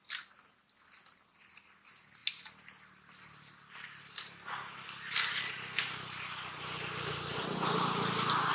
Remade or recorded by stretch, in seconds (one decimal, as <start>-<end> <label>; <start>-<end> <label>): 0.0-8.5 recorded

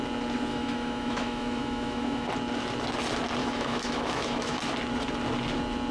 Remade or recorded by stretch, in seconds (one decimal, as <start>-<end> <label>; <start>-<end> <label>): 0.0-0.5 recorded; 0.5-2.3 remade; 2.3-3.4 recorded; 3.4-4.6 remade; 4.6-5.9 recorded

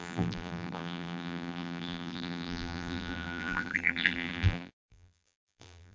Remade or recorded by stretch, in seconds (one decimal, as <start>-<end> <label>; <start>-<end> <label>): 0.0-5.9 remade

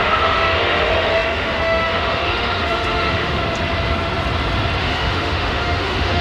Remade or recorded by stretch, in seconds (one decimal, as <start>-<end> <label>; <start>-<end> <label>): 0.0-3.4 remade; 3.4-4.8 recorded; 4.8-6.2 remade

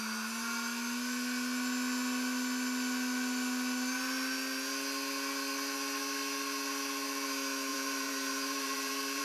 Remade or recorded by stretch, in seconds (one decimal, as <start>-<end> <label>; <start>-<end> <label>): 0.0-7.7 recorded; 7.7-9.2 remade

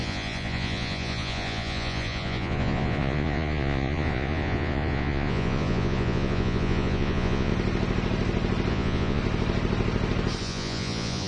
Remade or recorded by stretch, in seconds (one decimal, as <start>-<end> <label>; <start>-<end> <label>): 0.0-7.5 remade; 7.5-8.7 recorded; 8.7-9.2 remade; 9.2-10.4 recorded; 10.4-11.3 remade